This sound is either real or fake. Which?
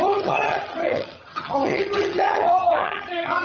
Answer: fake